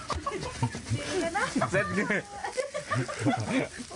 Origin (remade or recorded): recorded